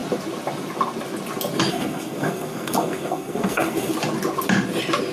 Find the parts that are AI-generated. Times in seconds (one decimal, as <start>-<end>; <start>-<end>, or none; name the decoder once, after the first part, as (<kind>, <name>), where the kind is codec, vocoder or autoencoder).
1.7-3.9 (codec, SNAC)